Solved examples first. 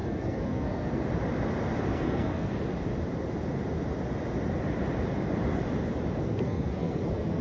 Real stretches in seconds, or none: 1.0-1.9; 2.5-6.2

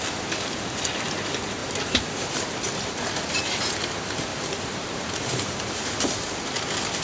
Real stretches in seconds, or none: 0.0-1.6; 2.3-4.3; 5.5-7.0

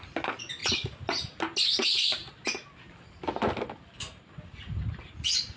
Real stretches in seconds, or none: 0.0-5.6

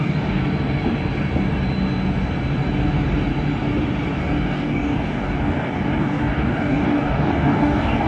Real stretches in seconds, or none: 0.4-4.2

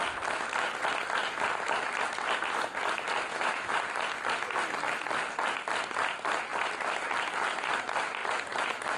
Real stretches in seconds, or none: 0.0-3.3; 3.8-9.0